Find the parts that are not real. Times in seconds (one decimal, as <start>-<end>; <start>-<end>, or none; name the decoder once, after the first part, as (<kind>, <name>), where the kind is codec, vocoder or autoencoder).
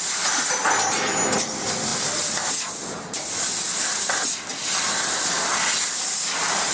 none